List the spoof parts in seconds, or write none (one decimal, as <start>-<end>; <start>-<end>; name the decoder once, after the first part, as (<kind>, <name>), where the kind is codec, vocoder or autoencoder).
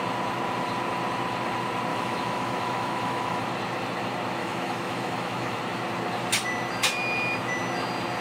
1.9-3.4 (autoencoder, DAC-VAE); 4.4-5.6